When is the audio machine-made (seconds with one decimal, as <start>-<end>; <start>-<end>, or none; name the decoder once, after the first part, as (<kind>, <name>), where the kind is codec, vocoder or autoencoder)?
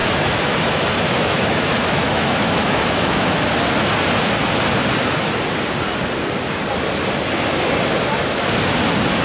0.0-3.5 (autoencoder, DAC-VAE)